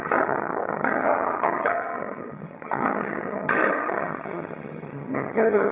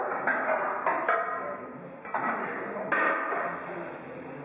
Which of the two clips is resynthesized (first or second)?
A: first